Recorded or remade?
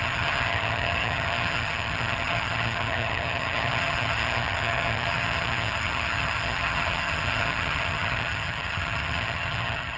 remade